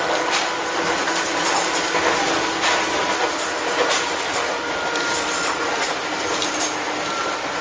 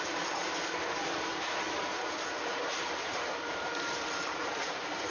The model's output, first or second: second